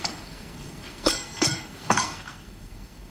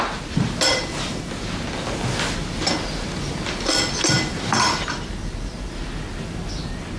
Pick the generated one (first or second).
first